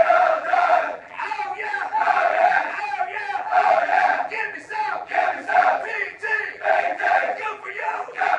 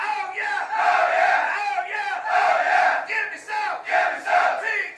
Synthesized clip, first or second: first